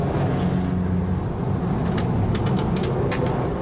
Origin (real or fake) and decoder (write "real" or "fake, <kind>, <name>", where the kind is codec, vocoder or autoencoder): real